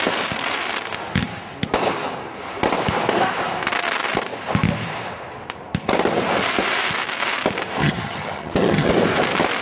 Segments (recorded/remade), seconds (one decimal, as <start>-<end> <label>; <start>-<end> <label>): 0.0-7.8 recorded; 7.8-8.9 remade; 8.9-9.6 recorded